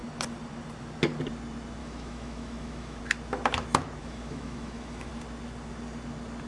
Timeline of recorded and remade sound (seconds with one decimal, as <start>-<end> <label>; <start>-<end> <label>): 0.0-1.8 recorded; 1.8-3.0 remade; 3.0-4.0 recorded; 4.0-5.1 remade; 5.1-6.5 recorded